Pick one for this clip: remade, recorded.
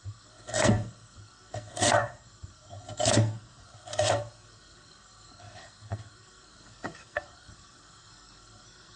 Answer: remade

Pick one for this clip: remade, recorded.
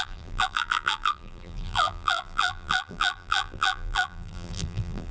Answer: remade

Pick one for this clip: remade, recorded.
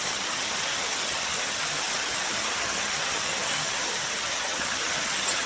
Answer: remade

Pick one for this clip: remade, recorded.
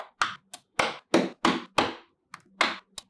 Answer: recorded